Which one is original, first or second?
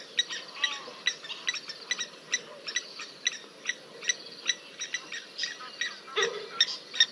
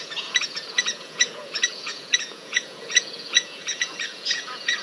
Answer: first